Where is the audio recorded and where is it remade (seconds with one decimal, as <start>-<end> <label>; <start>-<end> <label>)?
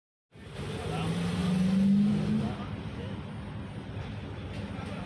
0.0-5.1 recorded